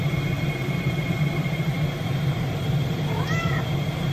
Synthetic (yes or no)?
yes